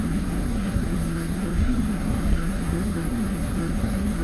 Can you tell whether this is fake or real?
fake